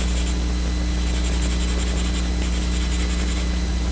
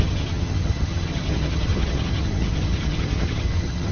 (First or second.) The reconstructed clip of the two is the second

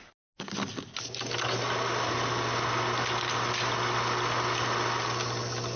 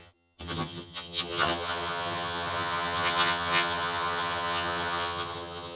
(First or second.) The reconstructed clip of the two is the second